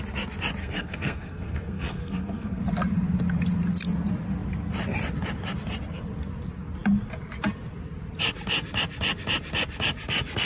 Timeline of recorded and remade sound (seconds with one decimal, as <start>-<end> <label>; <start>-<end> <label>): 0.0-0.6 recorded; 0.6-2.6 remade; 2.6-10.5 recorded